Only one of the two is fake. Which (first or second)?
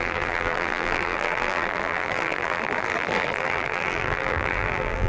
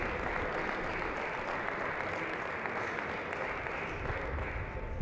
first